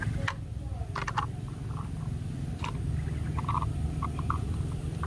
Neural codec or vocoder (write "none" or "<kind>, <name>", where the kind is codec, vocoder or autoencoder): none